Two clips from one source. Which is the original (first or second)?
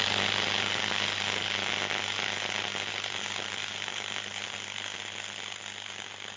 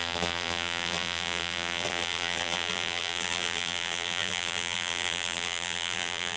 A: first